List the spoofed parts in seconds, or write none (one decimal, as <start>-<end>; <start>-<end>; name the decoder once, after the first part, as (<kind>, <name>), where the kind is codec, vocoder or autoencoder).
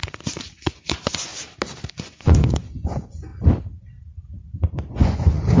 0.0-1.3 (vocoder, Vocos); 1.9-3.3; 4.9-5.6